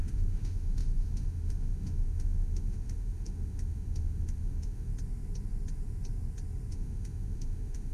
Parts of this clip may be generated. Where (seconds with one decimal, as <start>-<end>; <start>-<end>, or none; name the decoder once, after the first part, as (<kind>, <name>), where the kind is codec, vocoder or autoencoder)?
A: 0.0-4.9 (autoencoder, DAC-VAE); 6.7-7.9